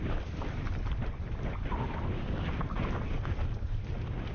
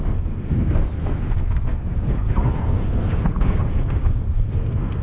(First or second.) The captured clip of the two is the first